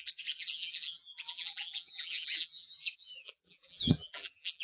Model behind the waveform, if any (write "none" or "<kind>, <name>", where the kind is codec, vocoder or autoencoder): vocoder, BigVGAN v2